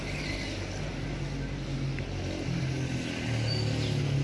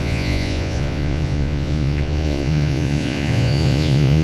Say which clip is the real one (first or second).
first